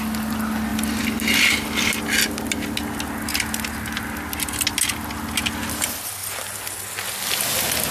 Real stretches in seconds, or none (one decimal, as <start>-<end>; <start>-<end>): 0.0-7.9